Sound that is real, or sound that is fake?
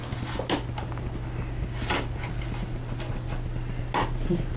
real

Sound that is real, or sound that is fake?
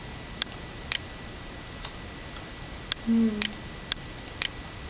real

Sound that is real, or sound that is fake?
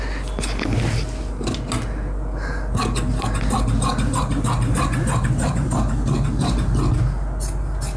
real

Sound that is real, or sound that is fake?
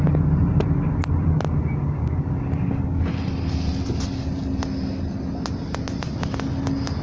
real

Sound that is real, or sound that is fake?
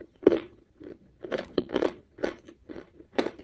fake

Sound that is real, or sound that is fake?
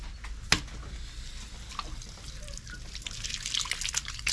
real